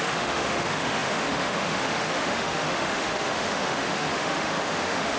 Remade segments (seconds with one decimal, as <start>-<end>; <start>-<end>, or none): 0.0-5.2